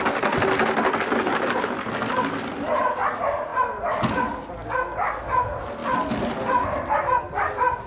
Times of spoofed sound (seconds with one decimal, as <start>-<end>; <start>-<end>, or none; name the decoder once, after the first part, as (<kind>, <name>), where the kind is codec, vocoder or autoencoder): none